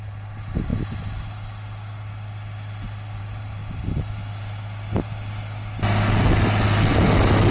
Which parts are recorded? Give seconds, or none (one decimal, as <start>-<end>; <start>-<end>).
0.0-7.5